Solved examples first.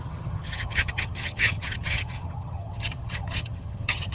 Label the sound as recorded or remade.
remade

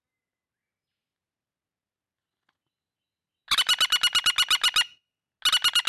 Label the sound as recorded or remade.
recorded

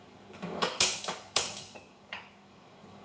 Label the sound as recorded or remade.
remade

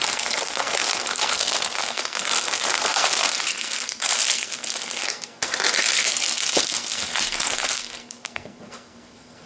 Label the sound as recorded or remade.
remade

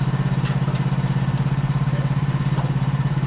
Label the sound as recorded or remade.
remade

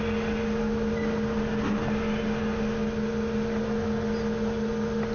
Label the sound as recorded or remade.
recorded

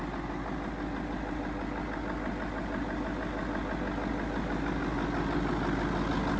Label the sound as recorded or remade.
recorded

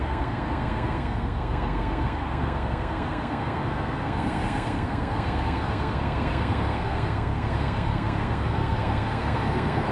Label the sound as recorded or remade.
remade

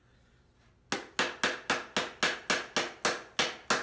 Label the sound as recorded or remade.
recorded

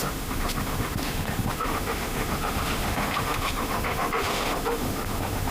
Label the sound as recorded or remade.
remade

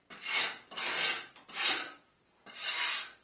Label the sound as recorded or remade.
recorded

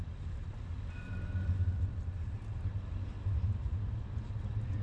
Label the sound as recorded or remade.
recorded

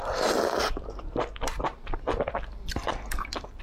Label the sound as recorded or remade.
remade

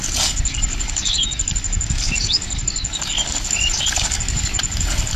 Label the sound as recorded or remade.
remade